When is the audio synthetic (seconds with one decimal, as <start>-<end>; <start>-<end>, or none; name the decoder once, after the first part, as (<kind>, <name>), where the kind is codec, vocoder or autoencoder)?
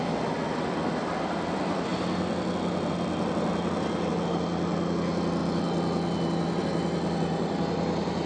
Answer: none